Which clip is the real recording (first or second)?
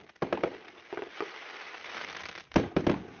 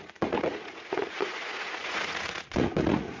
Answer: first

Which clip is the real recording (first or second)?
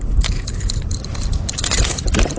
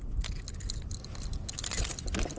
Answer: second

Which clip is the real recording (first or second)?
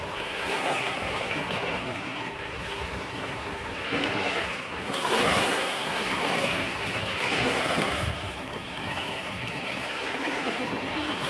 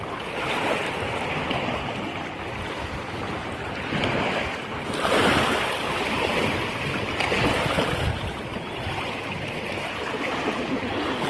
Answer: second